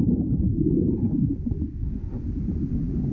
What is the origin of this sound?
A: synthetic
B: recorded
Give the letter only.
B